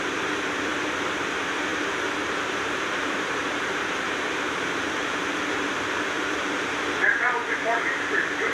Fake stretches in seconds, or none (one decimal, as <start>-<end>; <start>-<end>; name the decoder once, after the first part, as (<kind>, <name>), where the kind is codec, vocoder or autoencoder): 0.0-0.7 (vocoder, BigVGAN v2); 1.2-8.5